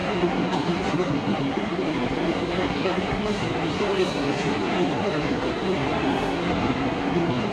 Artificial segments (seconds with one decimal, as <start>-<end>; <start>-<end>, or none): 0.0-7.5